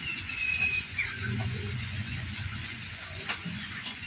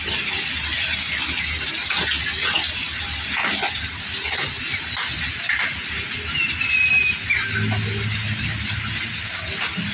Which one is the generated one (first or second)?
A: first